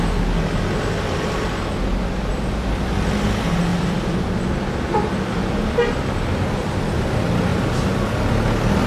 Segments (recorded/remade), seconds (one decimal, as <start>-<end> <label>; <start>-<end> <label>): 0.0-1.9 recorded; 1.9-2.9 remade; 2.9-3.7 recorded; 3.7-6.8 remade; 6.8-8.9 recorded